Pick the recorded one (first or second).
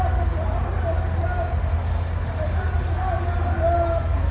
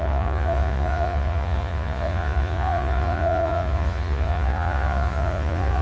first